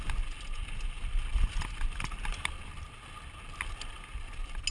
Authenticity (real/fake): real